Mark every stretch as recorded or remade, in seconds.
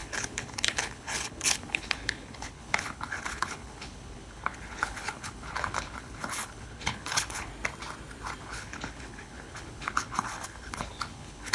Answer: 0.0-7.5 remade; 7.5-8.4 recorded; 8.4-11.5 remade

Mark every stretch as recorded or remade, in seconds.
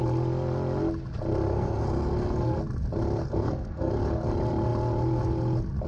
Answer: 0.0-1.5 recorded; 1.5-2.6 remade; 2.6-3.2 recorded; 3.2-3.9 remade; 3.9-5.9 recorded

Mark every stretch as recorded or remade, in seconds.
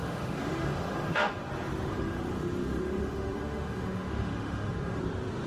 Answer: 0.0-1.3 remade; 1.3-1.9 recorded; 1.9-5.0 remade; 5.0-5.5 recorded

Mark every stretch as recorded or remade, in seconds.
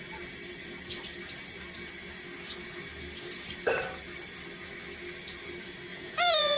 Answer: 0.0-5.9 recorded; 5.9-6.6 remade